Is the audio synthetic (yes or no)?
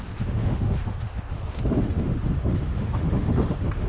yes